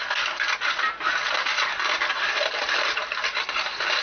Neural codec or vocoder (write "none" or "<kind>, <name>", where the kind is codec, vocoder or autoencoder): none